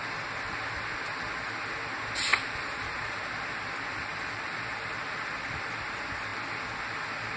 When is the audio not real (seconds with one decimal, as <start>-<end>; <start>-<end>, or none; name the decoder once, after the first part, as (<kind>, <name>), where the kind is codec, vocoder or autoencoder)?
2.3-3.3 (vocoder, BigVGAN v2); 4.0-4.8

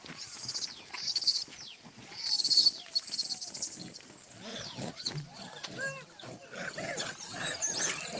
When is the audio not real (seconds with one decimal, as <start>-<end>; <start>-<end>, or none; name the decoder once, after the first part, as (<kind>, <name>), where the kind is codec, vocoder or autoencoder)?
1.5-2.4 (vocoder, Vocos); 4.5-5.4

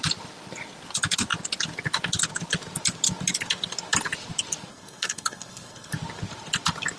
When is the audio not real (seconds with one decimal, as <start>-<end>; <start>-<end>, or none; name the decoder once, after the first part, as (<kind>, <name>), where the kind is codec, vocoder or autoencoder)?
4.7-5.9 (codec, SNAC)

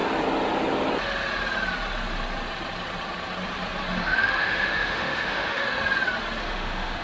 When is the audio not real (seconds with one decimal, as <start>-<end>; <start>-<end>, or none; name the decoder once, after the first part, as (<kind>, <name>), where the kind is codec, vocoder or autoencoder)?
4.0-5.8 (autoencoder, DAC-VAE); 6.4-7.0

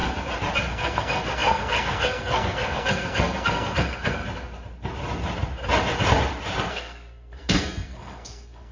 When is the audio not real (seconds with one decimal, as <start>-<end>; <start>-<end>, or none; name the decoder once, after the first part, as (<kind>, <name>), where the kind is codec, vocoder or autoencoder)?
0.7-4.2 (codec, SNAC); 6.7-8.7

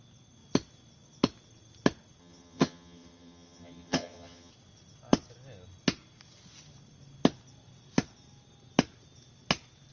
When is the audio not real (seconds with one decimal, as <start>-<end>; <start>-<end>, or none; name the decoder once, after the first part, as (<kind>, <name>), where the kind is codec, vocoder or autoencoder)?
2.2-4.5 (vocoder, HiFi-GAN)